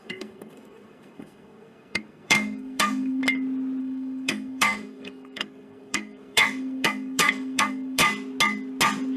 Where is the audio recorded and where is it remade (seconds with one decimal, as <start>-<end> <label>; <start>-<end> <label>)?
0.0-3.2 remade; 3.2-3.8 recorded; 3.8-8.0 remade; 8.0-9.2 recorded